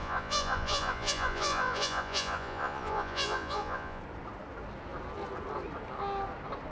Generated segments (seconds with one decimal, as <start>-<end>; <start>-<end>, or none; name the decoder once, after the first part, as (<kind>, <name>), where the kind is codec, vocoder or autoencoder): 0.0-4.0 (vocoder, Vocos)